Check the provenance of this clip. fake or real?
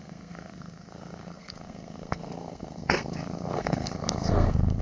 fake